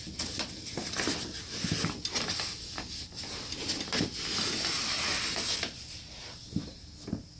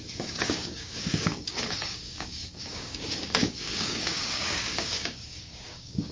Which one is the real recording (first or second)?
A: first